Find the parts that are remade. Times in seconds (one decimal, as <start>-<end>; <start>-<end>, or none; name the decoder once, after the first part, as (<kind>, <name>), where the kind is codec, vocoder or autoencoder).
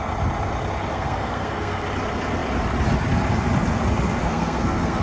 0.9-1.8 (codec, SNAC); 4.2-5.0